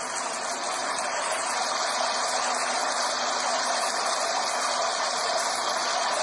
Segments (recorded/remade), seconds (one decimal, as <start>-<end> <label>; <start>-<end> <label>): 0.0-6.2 recorded